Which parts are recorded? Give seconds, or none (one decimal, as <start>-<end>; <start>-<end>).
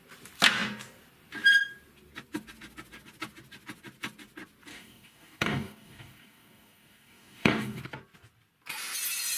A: 0.0-4.7; 7.8-9.4